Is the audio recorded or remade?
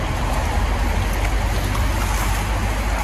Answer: recorded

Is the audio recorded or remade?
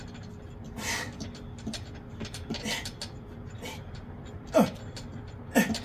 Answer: recorded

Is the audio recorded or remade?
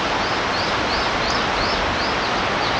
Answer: recorded